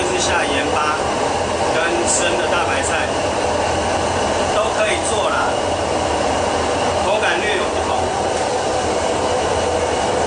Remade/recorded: remade